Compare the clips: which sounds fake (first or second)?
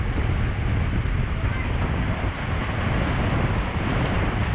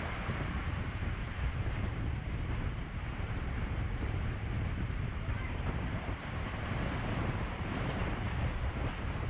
second